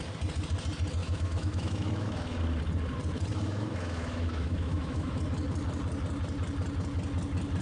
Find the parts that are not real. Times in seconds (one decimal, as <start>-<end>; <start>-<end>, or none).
1.0-2.4; 3.3-5.2